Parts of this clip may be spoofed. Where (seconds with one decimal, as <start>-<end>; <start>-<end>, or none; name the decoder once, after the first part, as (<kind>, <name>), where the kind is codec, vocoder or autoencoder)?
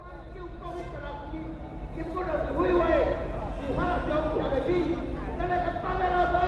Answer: 1.7-2.5 (vocoder, BigVGAN v2)